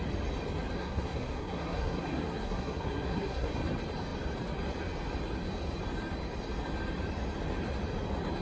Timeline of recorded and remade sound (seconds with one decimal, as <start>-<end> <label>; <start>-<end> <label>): 0.0-0.8 recorded; 0.8-3.5 remade; 3.5-8.4 recorded